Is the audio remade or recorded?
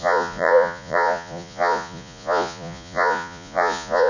remade